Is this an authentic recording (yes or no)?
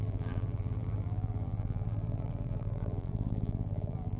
no